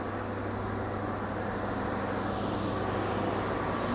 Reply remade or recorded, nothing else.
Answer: recorded